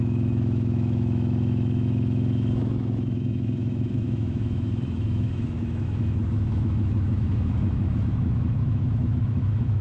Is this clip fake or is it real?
fake